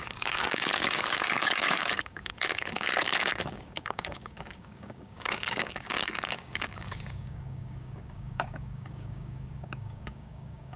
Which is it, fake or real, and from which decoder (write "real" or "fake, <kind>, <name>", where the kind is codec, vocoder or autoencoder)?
fake, codec, DAC